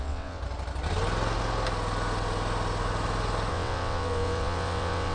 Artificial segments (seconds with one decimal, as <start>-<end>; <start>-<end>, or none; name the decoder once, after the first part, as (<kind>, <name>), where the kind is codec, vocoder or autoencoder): 0.0-0.4 (vocoder, WaveNeXt); 3.5-5.1